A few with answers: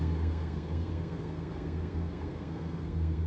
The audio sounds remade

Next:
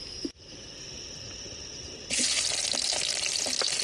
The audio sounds recorded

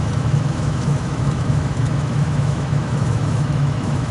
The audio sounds remade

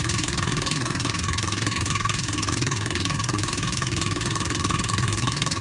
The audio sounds remade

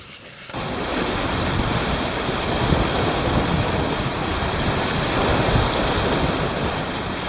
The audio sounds recorded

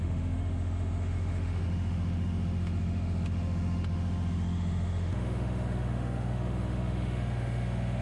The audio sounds remade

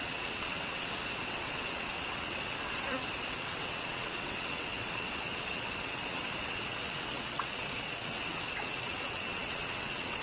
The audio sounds remade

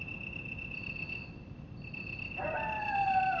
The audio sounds recorded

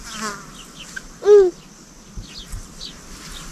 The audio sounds recorded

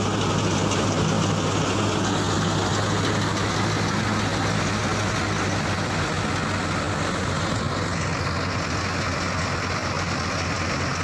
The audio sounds recorded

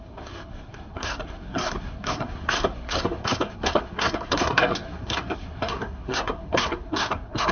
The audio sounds remade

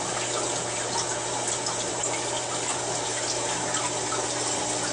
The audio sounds recorded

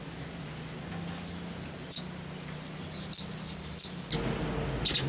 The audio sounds recorded